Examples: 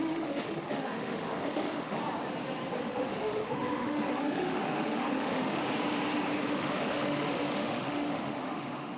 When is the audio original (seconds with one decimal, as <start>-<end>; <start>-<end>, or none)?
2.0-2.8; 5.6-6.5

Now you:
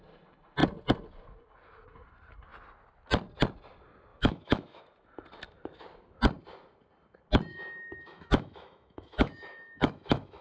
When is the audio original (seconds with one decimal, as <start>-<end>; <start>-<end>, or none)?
0.0-4.1; 4.8-7.5

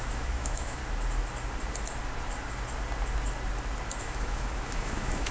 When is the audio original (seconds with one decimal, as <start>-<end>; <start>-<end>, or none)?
0.8-4.0